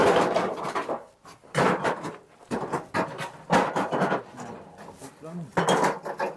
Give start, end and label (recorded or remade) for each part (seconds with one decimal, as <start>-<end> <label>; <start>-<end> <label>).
0.0-2.8 remade; 2.8-6.4 recorded